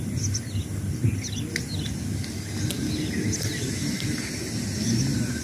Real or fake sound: real